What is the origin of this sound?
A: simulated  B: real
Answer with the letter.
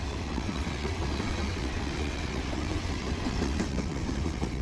A